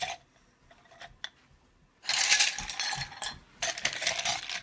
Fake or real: real